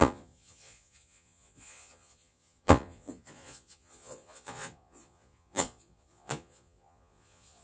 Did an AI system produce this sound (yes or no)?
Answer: yes